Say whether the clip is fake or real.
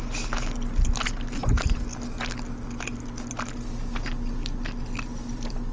real